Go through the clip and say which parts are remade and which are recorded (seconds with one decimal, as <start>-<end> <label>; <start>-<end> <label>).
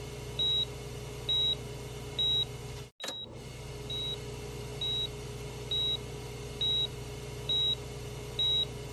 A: 0.0-8.9 recorded